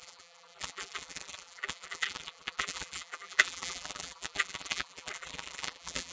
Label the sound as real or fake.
fake